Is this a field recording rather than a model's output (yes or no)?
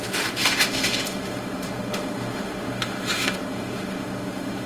no